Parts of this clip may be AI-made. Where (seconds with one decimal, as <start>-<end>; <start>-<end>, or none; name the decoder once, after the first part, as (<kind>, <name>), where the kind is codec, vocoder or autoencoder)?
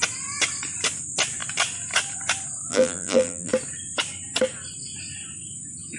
2.7-3.5 (vocoder, BigVGAN v2)